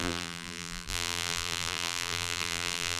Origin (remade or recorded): remade